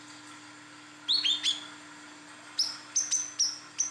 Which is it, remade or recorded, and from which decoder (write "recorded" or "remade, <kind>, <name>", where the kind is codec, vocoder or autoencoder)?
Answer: recorded